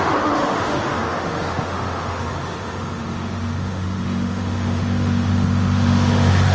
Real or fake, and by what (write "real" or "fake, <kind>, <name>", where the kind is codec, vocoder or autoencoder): fake, autoencoder, DAC-VAE